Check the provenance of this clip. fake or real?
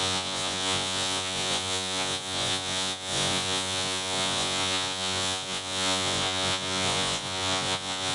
fake